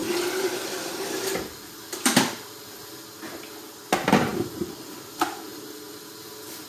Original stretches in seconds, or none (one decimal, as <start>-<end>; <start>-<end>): 2.6-4.3; 5.1-5.5; 6.0-6.7